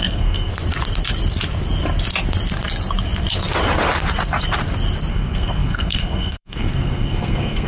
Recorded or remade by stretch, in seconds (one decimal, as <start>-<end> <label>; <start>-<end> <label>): 0.0-0.5 remade; 0.5-5.1 recorded; 5.1-7.7 remade